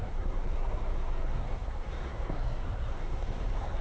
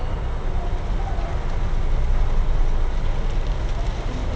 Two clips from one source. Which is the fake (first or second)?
first